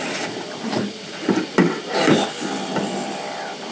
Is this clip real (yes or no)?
no